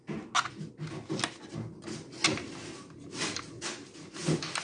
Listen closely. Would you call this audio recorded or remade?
recorded